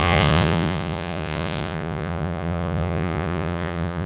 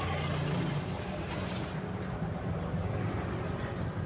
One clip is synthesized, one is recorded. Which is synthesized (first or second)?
first